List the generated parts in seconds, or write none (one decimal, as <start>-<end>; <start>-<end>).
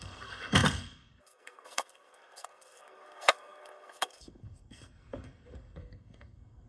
0.0-6.7